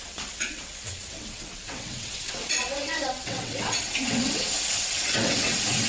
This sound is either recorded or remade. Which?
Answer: remade